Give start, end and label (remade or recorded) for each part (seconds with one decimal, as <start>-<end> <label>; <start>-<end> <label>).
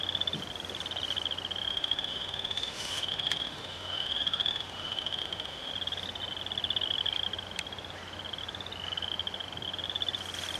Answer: 0.0-1.7 recorded; 1.7-5.7 remade; 5.7-10.6 recorded